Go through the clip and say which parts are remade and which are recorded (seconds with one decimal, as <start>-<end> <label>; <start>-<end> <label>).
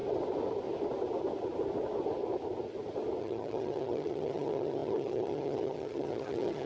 0.0-3.2 recorded; 3.2-6.7 remade